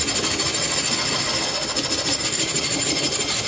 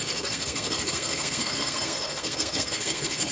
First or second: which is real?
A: first